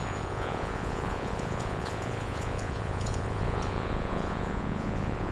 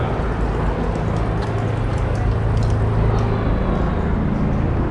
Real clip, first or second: second